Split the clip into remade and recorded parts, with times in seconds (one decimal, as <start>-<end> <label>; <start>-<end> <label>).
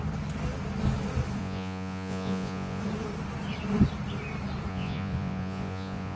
0.0-1.4 recorded; 1.4-2.8 remade; 2.8-4.7 recorded; 4.7-6.2 remade